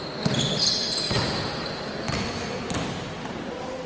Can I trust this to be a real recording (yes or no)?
no